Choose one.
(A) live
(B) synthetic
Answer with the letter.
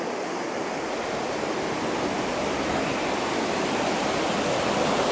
A